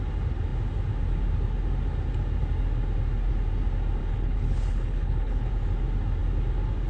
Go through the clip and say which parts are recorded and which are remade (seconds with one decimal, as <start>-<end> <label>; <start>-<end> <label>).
0.0-4.0 recorded; 4.0-5.5 remade; 5.5-6.9 recorded